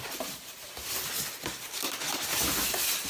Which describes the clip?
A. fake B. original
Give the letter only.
B